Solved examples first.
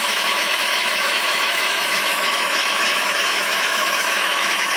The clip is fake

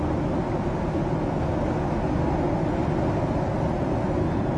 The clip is real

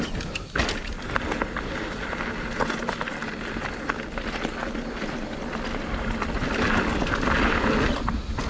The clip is real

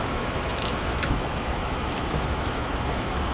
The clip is fake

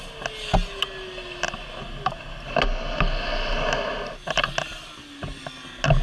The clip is real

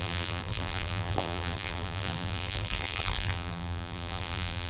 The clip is fake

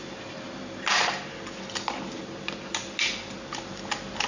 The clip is real